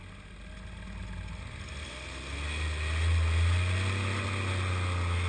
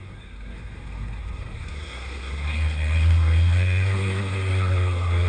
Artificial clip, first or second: second